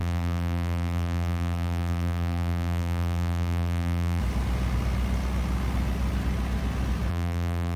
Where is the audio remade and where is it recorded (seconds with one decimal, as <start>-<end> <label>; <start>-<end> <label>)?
0.0-4.2 remade; 4.2-7.1 recorded; 7.1-7.8 remade

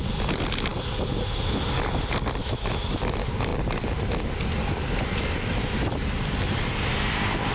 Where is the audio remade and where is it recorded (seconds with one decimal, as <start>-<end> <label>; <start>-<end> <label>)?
0.0-2.4 recorded; 2.4-3.0 remade; 3.0-7.5 recorded

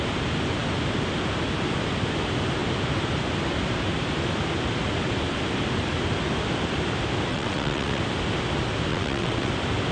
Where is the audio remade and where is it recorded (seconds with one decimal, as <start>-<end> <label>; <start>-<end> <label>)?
0.0-7.3 recorded; 7.3-8.0 remade; 8.0-8.9 recorded; 8.9-9.5 remade; 9.5-9.9 recorded

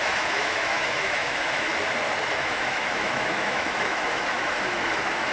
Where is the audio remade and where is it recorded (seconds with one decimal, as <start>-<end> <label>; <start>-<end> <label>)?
0.0-1.7 remade; 1.7-2.3 recorded; 2.3-5.3 remade

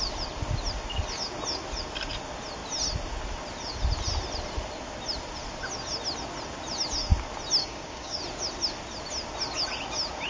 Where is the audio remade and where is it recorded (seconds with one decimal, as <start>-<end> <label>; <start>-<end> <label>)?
0.0-7.6 recorded; 7.6-8.2 remade; 8.2-10.3 recorded

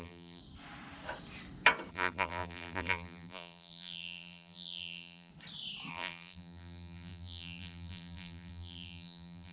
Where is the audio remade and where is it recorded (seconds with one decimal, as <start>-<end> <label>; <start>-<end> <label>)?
0.0-0.4 remade; 0.4-1.9 recorded; 1.9-5.3 remade; 5.3-5.9 recorded; 5.9-9.5 remade

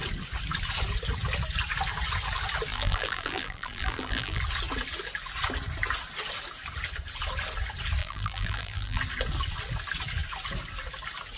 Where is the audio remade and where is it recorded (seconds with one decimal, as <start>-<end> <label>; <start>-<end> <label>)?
0.0-2.7 recorded; 2.7-4.4 remade; 4.4-8.0 recorded; 8.0-9.0 remade; 9.0-11.4 recorded

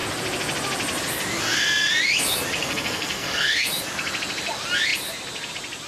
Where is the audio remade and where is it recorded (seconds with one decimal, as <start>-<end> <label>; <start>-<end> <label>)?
0.0-2.6 recorded; 2.6-3.7 remade; 3.7-5.9 recorded